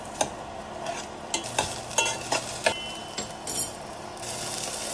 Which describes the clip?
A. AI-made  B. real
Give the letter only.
B